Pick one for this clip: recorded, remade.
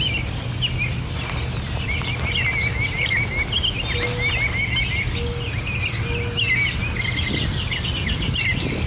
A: recorded